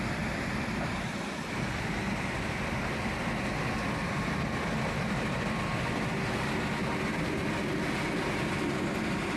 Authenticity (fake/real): real